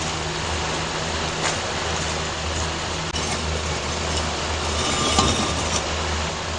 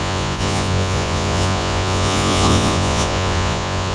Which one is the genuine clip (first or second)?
first